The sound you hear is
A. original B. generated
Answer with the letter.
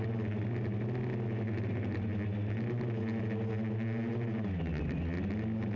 A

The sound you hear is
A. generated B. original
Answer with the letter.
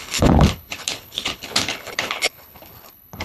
A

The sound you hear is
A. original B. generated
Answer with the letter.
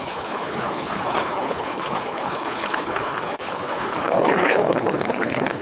B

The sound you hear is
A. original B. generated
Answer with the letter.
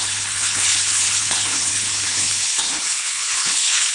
B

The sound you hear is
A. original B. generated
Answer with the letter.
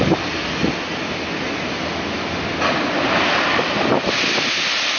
A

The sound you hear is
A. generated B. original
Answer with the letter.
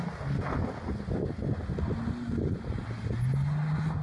B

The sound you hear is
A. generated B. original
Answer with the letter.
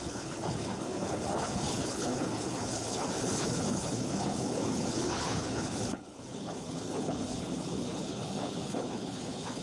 A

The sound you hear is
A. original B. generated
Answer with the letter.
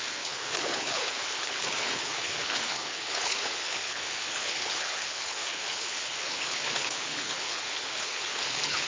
B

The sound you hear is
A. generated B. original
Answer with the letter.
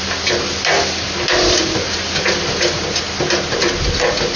B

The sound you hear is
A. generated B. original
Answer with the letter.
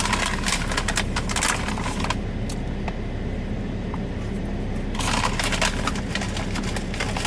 B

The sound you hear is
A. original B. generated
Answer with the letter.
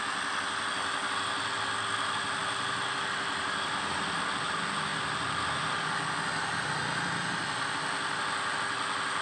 A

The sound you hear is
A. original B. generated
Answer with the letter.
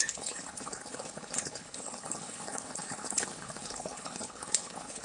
B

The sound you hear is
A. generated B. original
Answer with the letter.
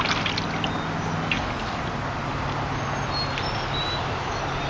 B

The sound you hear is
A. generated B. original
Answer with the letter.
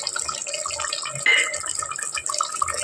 B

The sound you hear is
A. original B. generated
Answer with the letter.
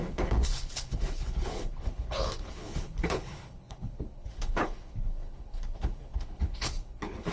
B